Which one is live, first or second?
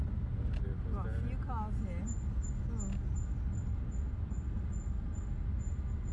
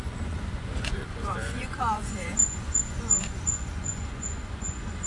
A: first